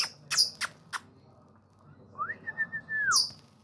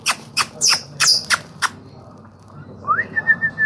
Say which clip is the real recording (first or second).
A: first